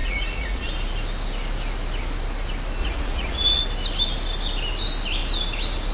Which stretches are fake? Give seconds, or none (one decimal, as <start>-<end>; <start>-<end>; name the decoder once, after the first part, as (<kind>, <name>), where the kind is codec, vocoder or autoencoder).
0.0-0.7 (vocoder, Vocos); 2.8-3.6